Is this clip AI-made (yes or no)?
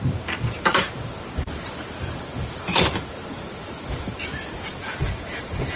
yes